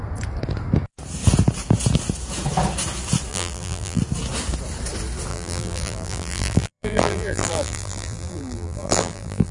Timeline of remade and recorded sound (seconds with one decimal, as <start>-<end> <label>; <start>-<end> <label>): 0.0-3.3 recorded; 3.3-4.0 remade; 4.0-5.3 recorded; 5.3-9.5 remade